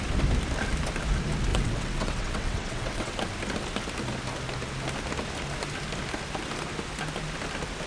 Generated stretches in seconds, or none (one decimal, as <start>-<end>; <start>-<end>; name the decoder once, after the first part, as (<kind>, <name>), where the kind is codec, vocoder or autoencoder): 1.5-3.1 (vocoder, WaveNeXt)